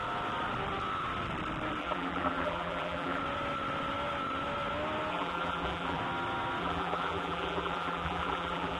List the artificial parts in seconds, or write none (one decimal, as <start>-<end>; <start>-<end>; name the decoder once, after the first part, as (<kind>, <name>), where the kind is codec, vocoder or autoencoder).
1.8-3.2 (vocoder, BigVGAN v2); 5.1-6.0; 6.6-8.8